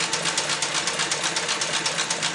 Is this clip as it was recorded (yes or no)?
yes